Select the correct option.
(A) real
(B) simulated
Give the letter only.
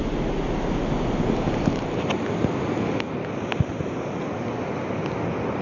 A